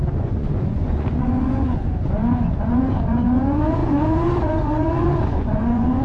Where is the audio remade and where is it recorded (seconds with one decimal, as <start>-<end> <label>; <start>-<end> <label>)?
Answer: 0.0-6.0 remade